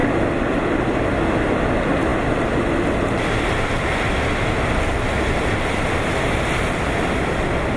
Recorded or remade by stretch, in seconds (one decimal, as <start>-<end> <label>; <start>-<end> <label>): 0.0-7.8 recorded